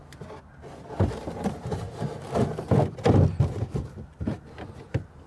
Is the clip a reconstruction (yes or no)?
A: no